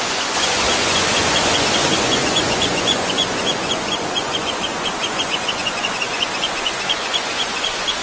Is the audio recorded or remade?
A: remade